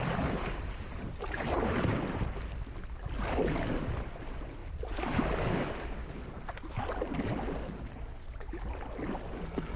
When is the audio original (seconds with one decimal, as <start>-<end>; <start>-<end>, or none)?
0.0-6.2; 6.8-9.8